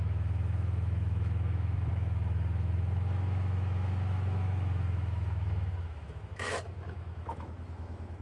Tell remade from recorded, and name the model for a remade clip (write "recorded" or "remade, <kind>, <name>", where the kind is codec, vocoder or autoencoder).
remade, autoencoder, DAC-VAE